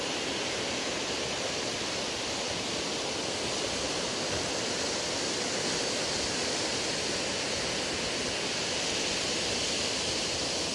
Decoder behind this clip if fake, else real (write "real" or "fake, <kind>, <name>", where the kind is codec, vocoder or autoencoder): real